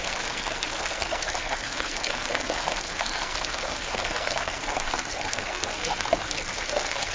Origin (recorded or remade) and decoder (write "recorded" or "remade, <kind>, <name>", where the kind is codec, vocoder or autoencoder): remade, codec, SNAC